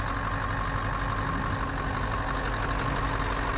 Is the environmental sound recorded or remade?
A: recorded